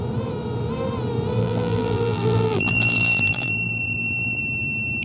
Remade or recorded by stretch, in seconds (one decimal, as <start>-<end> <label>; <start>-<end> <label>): 0.0-1.4 recorded; 1.4-4.4 remade; 4.4-5.0 recorded